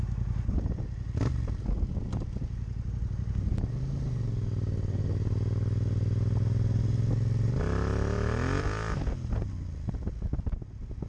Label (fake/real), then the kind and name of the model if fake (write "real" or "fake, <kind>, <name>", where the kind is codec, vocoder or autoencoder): real